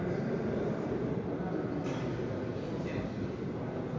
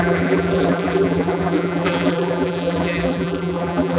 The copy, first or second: second